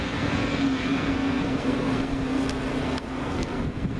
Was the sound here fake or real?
fake